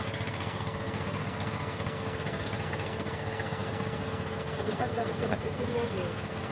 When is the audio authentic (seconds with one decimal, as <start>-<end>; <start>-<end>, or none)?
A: none